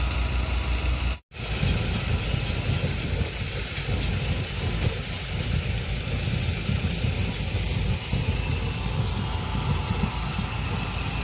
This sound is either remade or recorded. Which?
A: recorded